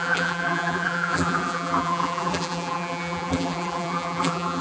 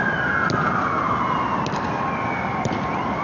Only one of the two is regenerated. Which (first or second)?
first